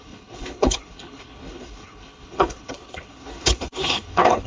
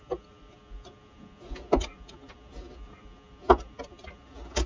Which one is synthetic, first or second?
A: first